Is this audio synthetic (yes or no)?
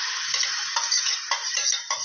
no